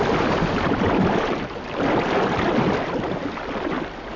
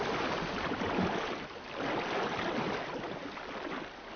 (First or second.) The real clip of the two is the second